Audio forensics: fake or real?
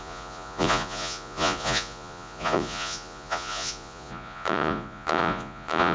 fake